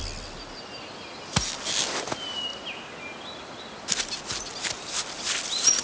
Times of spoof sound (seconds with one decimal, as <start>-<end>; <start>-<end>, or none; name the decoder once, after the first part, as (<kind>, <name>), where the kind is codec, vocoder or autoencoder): none